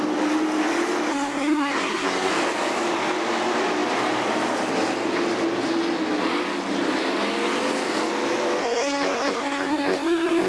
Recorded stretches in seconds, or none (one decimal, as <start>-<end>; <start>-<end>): 0.0-1.1; 2.3-8.6